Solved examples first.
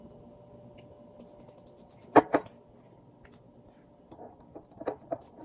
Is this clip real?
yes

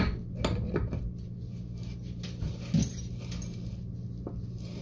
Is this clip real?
yes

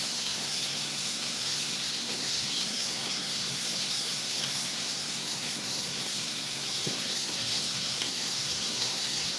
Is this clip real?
no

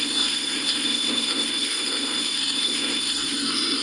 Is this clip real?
no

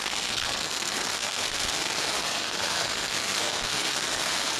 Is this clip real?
no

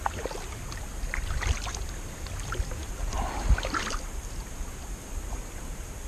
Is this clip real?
yes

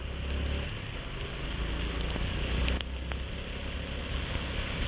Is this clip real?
yes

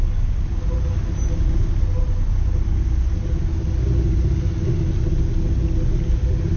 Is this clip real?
yes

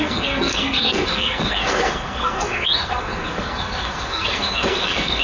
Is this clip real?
no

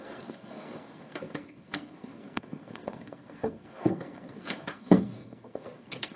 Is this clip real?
no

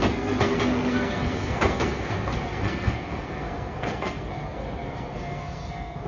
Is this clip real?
no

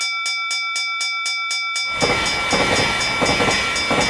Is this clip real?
yes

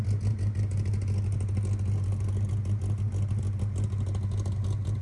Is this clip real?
yes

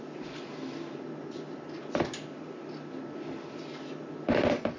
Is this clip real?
yes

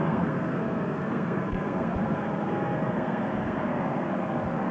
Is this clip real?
no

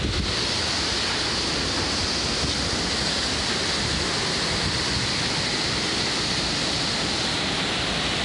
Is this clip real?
yes